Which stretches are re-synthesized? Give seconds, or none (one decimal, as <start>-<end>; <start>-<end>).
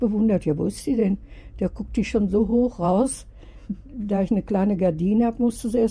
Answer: 0.0-5.9